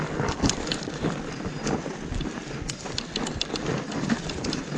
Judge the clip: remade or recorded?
remade